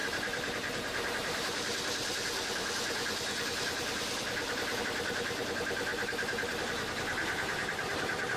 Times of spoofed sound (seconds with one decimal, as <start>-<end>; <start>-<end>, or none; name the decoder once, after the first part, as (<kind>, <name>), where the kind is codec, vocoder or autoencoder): 0.0-5.9 (vocoder, BigVGAN v2); 6.6-8.4